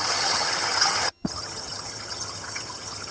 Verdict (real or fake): fake